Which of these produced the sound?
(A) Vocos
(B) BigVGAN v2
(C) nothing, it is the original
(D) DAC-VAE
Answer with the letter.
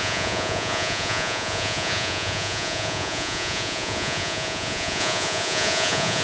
A